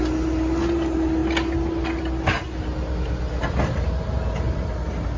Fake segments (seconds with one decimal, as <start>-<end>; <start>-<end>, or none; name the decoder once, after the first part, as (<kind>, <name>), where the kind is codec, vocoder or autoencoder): none